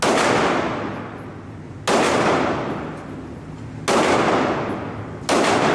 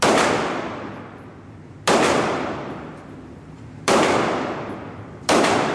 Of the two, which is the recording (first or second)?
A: first